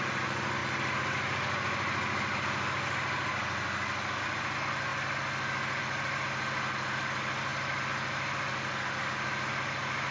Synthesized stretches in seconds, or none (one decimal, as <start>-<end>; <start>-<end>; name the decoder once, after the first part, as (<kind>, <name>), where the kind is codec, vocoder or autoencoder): 0.0-10.1 (vocoder, BigVGAN v2)